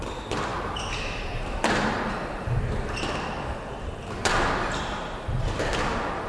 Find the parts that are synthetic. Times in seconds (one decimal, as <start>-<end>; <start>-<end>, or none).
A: 0.5-4.3